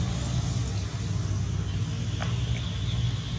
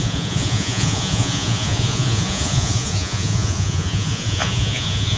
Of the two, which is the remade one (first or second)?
second